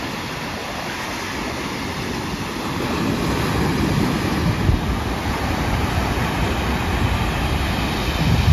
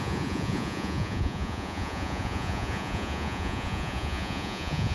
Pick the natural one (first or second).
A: first